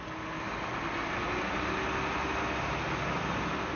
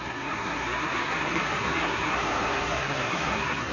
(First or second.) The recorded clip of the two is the first